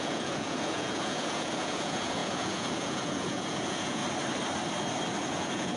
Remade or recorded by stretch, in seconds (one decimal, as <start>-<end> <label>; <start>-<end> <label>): 0.0-4.0 remade; 4.0-5.3 recorded; 5.3-5.8 remade